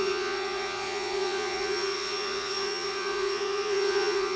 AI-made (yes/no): yes